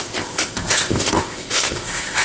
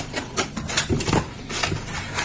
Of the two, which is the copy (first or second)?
first